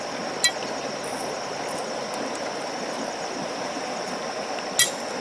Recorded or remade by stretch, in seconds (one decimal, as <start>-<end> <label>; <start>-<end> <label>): 0.0-1.1 recorded; 1.1-4.2 remade; 4.2-5.2 recorded